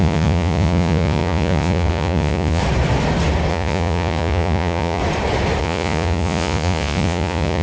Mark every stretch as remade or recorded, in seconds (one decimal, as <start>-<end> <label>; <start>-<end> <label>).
0.0-2.6 remade; 2.6-3.5 recorded; 3.5-5.0 remade; 5.0-5.6 recorded; 5.6-7.6 remade